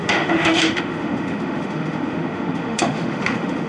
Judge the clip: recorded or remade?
remade